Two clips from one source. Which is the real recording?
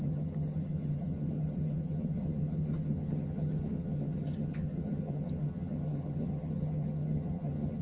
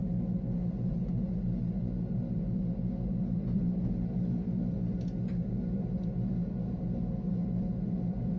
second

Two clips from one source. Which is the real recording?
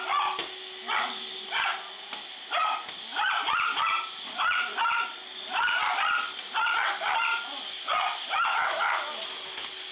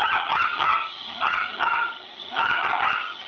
first